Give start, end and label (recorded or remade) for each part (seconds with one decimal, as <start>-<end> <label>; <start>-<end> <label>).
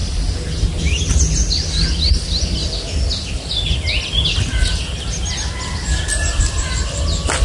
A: 0.0-7.4 recorded